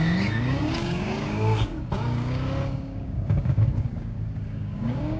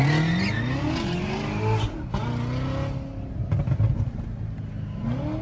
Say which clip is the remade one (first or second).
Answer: first